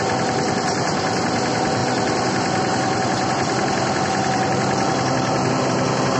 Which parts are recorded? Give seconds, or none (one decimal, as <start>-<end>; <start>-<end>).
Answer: 0.0-6.2